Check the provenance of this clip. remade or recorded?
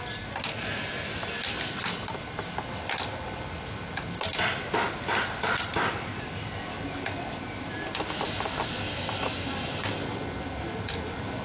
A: recorded